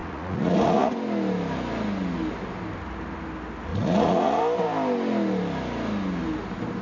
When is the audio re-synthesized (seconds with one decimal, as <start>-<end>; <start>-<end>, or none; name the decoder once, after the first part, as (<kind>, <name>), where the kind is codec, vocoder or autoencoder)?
0.0-0.9 (vocoder, Vocos); 3.7-4.4